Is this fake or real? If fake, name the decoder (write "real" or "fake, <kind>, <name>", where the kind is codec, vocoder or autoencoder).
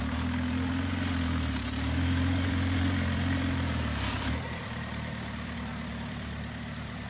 fake, vocoder, BigVGAN v2